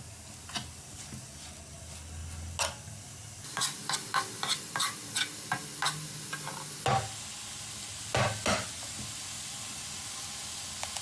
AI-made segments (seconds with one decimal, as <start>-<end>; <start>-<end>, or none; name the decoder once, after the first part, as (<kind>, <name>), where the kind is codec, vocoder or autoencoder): none